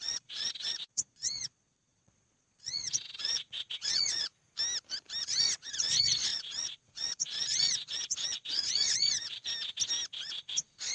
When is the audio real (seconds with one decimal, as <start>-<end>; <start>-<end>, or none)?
4.3-5.2; 9.4-10.2